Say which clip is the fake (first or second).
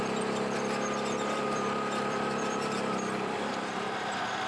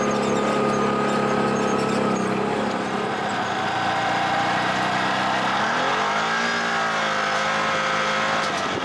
first